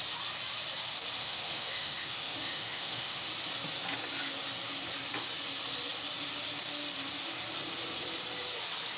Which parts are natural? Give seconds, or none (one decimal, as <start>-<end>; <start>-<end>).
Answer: 0.0-1.2; 3.3-9.0